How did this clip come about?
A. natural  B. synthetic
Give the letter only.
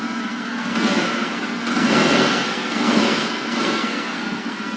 B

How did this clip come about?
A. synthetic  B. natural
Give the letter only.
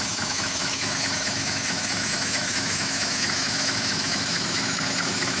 A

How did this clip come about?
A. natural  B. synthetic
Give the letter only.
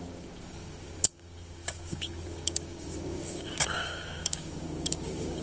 B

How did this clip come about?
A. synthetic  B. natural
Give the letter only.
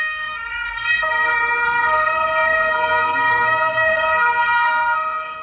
A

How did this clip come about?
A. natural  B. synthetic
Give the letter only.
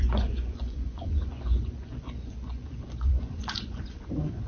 B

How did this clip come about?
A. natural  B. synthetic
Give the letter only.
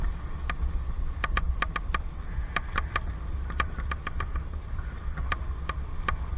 A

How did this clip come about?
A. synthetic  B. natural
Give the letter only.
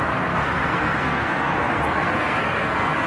A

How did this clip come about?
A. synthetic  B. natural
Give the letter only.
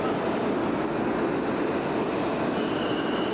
B